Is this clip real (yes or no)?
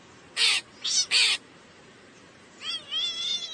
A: yes